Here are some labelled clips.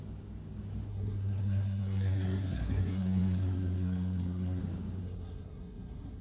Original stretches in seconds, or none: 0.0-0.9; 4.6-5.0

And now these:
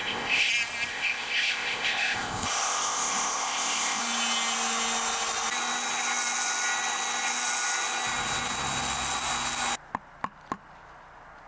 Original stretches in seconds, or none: 0.5-0.9; 4.0-11.5

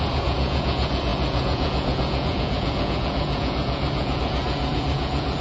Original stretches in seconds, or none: none

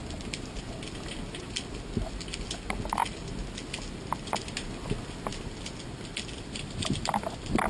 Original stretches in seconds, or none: 0.5-7.7

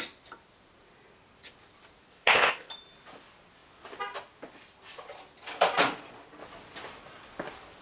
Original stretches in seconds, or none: 0.0-2.1; 2.7-7.8

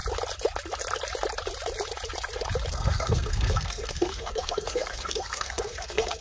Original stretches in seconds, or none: 0.0-2.7